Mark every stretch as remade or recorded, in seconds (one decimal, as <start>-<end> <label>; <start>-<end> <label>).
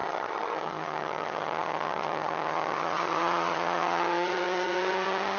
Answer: 0.0-5.4 remade